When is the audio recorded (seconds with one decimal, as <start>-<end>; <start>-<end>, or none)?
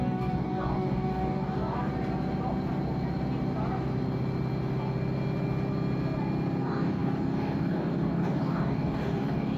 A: 1.9-6.6